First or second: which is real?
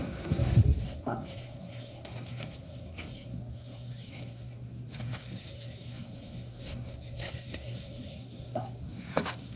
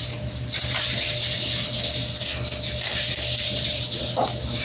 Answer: second